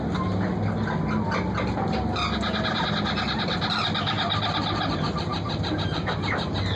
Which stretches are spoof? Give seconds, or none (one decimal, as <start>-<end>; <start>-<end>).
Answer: none